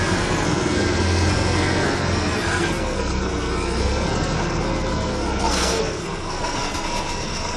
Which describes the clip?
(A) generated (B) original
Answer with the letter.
A